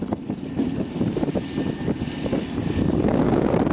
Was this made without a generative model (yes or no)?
yes